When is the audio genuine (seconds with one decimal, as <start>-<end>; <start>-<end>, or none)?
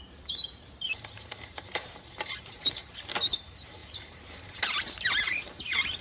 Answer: 2.8-3.4